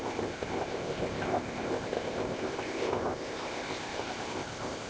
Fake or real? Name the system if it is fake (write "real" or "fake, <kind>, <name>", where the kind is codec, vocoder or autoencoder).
fake, codec, ZipCodec